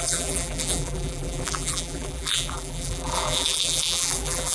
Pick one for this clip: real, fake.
fake